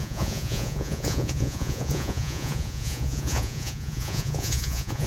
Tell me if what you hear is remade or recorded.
remade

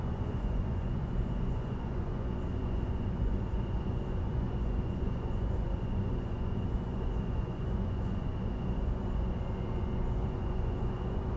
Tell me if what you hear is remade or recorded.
remade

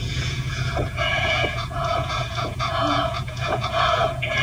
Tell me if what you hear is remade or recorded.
remade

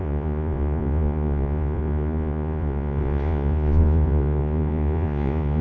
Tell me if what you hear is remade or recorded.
remade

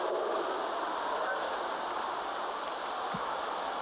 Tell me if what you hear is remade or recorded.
recorded